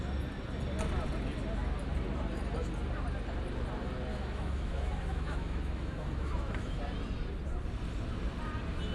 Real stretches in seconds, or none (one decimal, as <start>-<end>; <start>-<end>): 0.0-4.1; 6.8-8.9